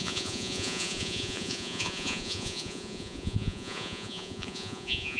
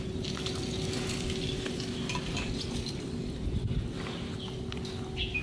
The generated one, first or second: first